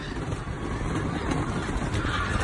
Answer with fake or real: real